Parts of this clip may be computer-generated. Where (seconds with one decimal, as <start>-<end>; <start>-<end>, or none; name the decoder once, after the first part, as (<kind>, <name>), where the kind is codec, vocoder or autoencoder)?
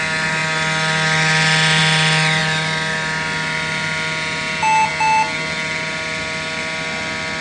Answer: none